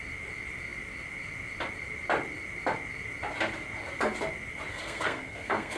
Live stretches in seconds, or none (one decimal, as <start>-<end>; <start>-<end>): 0.0-4.7